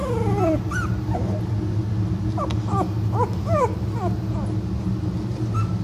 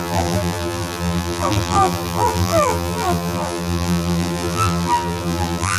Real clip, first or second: first